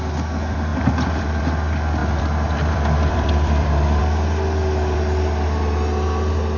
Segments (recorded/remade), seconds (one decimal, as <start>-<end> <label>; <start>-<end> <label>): 0.0-0.7 recorded; 0.7-1.4 remade; 1.4-2.0 recorded; 2.0-4.0 remade; 4.0-6.6 recorded